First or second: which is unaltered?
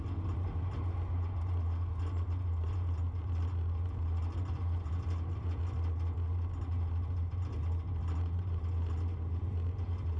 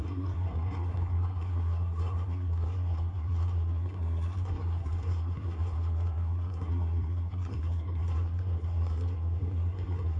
first